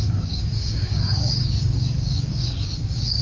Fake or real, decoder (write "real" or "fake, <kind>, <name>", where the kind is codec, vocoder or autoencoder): fake, codec, DAC